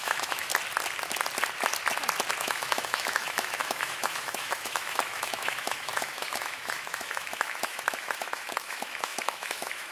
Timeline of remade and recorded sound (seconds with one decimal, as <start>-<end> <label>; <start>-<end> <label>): 0.0-0.5 remade; 0.5-2.4 recorded; 2.4-9.9 remade